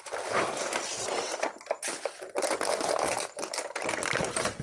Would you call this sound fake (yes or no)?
no